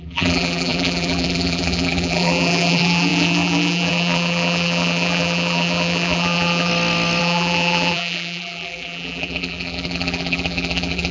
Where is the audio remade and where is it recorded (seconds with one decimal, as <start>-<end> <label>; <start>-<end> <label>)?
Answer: 0.0-6.7 remade; 6.7-7.2 recorded; 7.2-11.1 remade